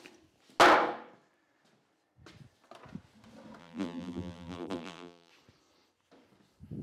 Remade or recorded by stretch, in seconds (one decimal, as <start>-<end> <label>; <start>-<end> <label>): 0.0-3.6 recorded; 3.6-5.3 remade; 5.3-6.8 recorded